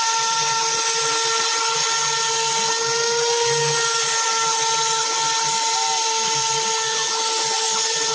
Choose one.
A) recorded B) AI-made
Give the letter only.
A